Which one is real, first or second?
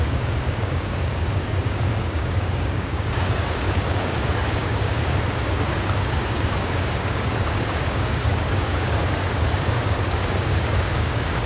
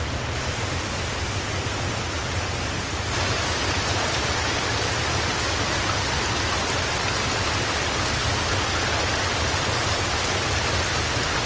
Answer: second